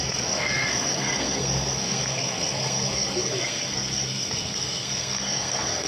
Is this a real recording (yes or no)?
no